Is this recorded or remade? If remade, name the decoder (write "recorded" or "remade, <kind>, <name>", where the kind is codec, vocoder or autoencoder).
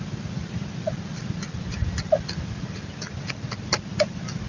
recorded